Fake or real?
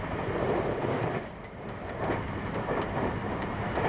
fake